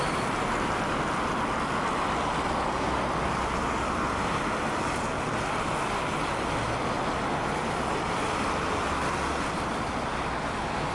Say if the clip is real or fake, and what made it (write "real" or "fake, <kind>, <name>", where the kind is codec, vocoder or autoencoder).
real